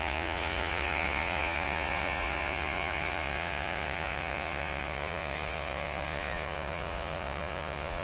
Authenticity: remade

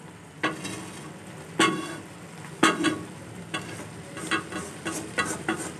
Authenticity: recorded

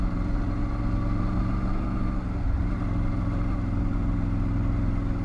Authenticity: recorded